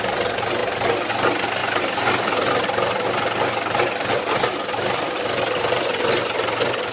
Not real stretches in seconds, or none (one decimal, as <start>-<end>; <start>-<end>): none